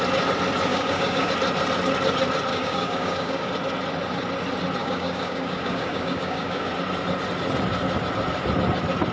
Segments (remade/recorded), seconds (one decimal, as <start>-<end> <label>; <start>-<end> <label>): 0.0-0.7 recorded; 0.7-1.3 remade; 1.3-2.5 recorded; 2.5-3.5 remade; 3.5-4.8 recorded; 4.8-6.7 remade; 6.7-9.1 recorded

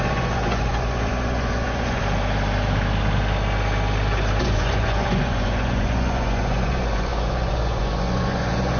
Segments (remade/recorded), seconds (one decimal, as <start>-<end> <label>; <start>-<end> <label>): 0.0-2.0 remade; 2.0-4.4 recorded; 4.4-8.8 remade

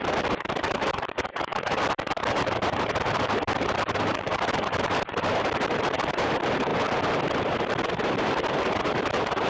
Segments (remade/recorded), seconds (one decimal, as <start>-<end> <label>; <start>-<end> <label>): 0.0-6.7 remade; 6.7-7.5 recorded; 7.5-9.5 remade

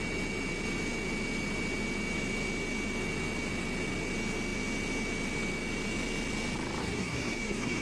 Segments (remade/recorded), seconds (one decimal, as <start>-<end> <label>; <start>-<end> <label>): 0.0-6.8 recorded; 6.8-7.8 remade

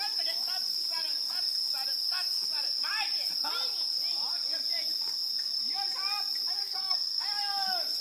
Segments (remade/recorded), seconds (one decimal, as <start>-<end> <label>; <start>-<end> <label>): 0.0-6.6 recorded; 6.6-7.2 remade; 7.2-8.0 recorded

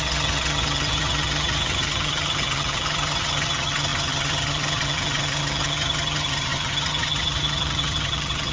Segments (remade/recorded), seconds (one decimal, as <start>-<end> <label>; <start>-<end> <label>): 0.0-8.5 remade

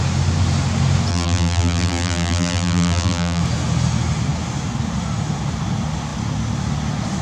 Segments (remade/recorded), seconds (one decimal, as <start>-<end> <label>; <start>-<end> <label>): 0.0-1.1 recorded; 1.1-3.4 remade; 3.4-7.2 recorded